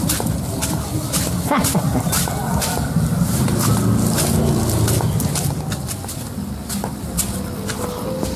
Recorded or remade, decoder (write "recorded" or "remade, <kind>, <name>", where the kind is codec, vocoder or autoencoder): recorded